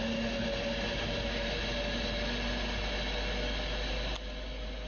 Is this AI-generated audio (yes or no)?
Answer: no